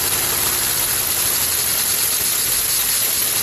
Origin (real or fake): real